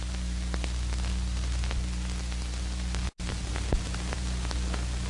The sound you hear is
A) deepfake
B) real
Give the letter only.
B